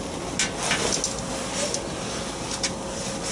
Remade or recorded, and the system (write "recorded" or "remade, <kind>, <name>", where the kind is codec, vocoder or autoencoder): recorded